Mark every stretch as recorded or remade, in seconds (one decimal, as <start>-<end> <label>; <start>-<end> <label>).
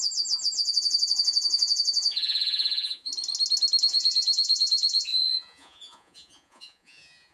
0.0-3.1 remade; 3.1-3.8 recorded; 3.8-7.3 remade